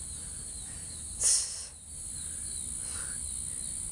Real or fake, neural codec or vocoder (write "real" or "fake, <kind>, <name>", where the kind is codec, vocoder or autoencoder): real